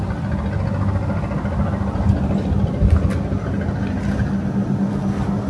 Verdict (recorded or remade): recorded